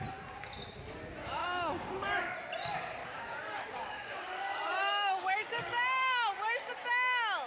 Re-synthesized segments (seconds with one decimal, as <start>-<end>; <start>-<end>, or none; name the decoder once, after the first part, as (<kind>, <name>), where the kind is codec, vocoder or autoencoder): 1.4-2.3 (codec, DAC); 3.0-6.7